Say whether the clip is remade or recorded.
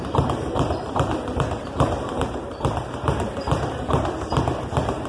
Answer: remade